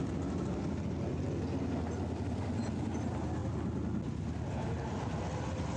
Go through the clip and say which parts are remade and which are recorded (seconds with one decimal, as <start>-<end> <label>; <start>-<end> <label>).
0.0-5.8 recorded